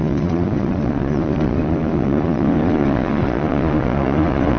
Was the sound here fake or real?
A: fake